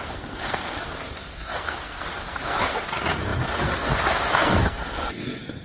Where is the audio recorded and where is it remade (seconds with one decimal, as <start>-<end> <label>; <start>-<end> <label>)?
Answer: 0.0-5.6 remade